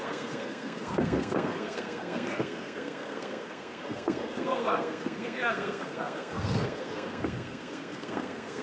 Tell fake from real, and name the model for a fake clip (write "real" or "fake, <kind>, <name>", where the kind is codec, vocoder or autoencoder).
fake, codec, SNAC